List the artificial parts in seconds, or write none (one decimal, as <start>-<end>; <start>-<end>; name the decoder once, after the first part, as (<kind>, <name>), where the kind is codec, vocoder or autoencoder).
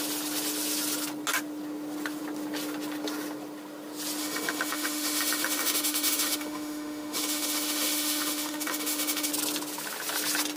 4.2-9.3 (autoencoder, DAC-VAE)